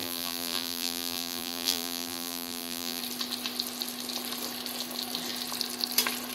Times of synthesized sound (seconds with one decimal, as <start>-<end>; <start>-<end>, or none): 0.0-3.0